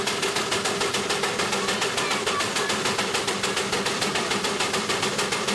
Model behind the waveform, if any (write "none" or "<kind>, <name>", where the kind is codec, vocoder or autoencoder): none